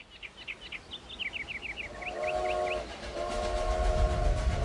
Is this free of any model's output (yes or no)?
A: yes